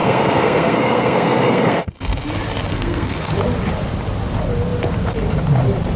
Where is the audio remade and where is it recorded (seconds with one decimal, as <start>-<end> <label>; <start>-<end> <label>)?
0.0-1.8 remade; 1.8-2.7 recorded; 2.7-3.3 remade; 3.3-6.0 recorded